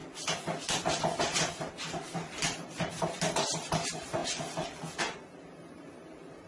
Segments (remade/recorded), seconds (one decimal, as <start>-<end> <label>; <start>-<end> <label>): 0.0-1.2 recorded; 1.2-4.2 remade; 4.2-4.9 recorded; 4.9-6.5 remade